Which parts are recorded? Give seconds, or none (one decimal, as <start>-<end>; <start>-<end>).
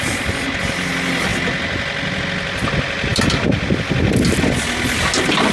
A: 0.0-5.5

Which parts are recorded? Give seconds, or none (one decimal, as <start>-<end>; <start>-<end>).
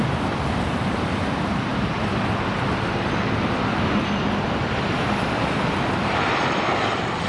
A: 0.0-7.3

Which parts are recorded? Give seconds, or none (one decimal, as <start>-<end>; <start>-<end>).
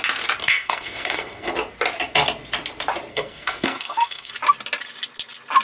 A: 0.0-0.4; 1.5-3.1; 4.3-5.6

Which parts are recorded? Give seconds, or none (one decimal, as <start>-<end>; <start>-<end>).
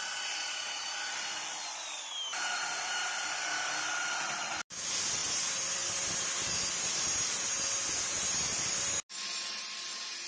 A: 0.0-10.3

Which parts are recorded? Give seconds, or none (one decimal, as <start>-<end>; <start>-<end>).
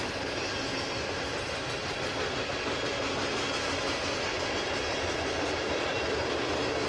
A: 0.0-6.9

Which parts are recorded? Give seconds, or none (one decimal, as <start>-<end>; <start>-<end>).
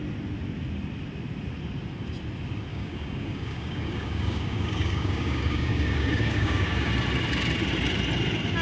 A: 0.0-2.7; 6.9-8.6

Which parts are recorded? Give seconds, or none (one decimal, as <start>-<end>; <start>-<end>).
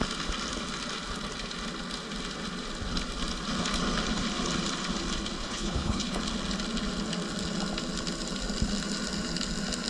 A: 0.0-5.4; 6.2-9.9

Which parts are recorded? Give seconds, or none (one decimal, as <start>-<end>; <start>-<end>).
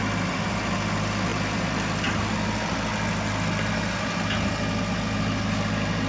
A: 0.0-6.1